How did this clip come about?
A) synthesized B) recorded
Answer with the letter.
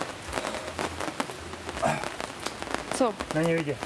B